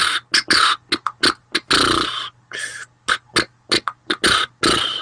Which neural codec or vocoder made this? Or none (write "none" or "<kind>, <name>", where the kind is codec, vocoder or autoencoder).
none